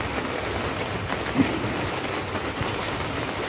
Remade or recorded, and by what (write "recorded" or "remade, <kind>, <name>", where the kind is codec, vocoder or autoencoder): recorded